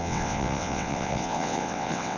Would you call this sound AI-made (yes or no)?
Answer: yes